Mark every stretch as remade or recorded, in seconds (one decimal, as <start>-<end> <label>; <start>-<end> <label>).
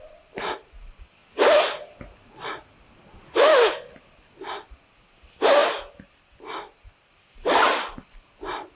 0.0-8.8 recorded